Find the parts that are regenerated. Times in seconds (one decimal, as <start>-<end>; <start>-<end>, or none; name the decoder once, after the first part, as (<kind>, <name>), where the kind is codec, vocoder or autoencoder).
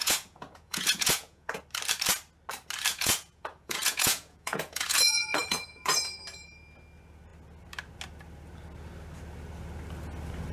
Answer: 0.0-1.6 (vocoder, Vocos); 2.9-5.9